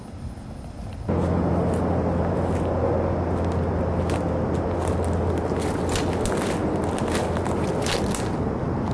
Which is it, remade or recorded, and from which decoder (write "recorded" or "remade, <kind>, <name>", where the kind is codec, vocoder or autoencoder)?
recorded